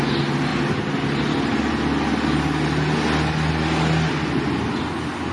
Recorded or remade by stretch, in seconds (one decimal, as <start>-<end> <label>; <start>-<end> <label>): 0.0-5.3 recorded

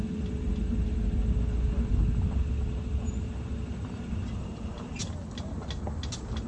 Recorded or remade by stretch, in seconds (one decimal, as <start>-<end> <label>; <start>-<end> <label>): 0.0-6.5 recorded

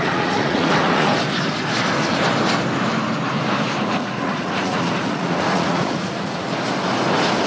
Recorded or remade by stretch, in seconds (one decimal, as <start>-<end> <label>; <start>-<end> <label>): 0.0-1.1 remade; 1.1-3.9 recorded; 3.9-6.5 remade; 6.5-7.5 recorded

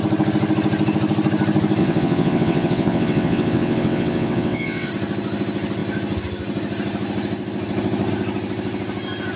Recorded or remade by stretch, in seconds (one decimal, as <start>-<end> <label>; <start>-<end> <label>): 0.0-1.8 recorded; 1.8-4.9 remade; 4.9-9.4 recorded

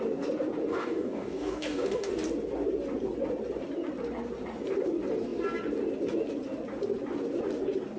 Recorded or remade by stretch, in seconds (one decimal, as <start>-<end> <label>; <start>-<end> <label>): 0.0-0.7 recorded; 0.7-2.1 remade; 2.1-8.0 recorded

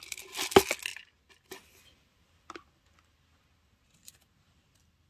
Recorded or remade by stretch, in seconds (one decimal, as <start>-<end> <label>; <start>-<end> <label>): 0.0-5.1 recorded